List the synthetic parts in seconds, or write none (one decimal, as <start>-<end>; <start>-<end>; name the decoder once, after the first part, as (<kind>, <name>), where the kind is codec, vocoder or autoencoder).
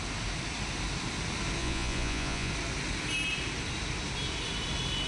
1.6-2.5 (vocoder, Vocos)